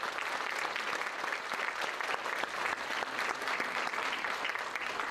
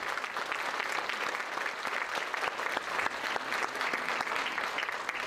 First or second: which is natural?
second